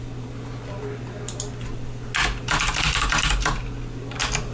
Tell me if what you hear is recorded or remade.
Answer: recorded